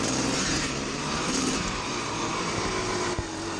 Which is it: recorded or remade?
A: remade